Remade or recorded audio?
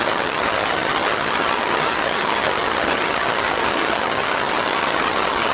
remade